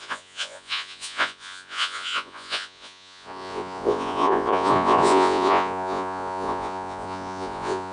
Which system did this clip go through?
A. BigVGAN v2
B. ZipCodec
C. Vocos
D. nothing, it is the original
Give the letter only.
C